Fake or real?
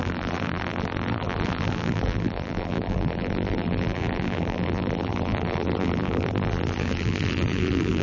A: fake